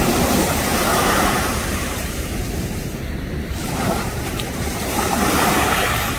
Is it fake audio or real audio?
fake